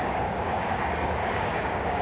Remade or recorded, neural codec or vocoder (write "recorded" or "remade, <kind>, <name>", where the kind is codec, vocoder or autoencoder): remade, codec, DAC